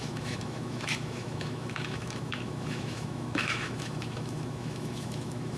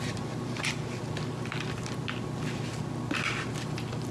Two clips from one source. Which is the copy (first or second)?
first